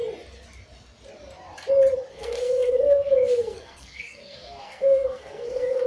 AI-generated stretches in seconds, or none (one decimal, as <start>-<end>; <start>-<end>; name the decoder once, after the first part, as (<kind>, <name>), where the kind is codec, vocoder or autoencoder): 2.1-5.9 (codec, SNAC)